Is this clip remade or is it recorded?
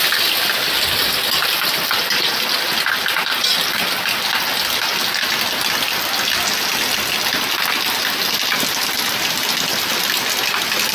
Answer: recorded